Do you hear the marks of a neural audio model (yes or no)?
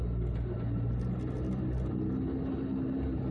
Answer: no